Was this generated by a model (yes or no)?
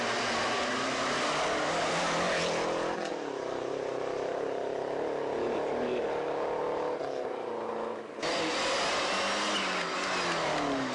no